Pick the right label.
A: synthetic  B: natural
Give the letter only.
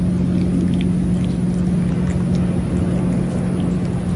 B